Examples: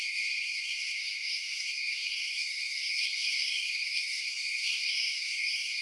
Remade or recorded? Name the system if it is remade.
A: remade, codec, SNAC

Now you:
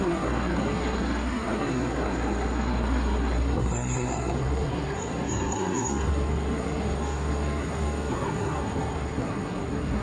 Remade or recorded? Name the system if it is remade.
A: remade, codec, SNAC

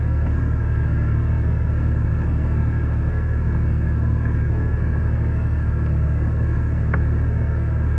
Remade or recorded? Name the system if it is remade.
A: remade, codec, SNAC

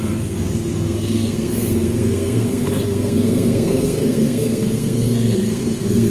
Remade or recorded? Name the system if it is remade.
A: remade, codec, SNAC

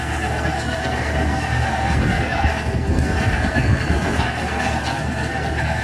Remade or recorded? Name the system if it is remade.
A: remade, codec, SNAC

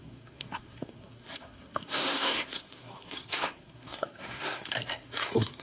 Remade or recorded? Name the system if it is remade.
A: remade, codec, SNAC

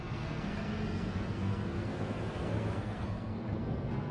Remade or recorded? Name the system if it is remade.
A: remade, codec, SNAC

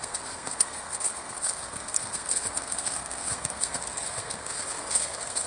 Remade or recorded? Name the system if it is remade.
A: remade, codec, SNAC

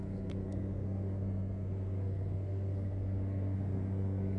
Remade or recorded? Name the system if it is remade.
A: remade, codec, SNAC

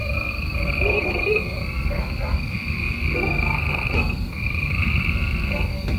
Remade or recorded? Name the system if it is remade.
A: remade, codec, SNAC